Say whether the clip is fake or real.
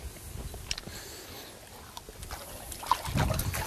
real